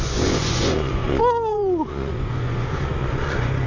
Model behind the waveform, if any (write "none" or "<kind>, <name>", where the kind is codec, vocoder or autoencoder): vocoder, Vocos